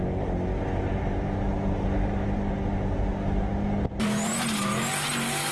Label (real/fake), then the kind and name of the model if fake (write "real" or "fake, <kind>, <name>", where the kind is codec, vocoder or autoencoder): real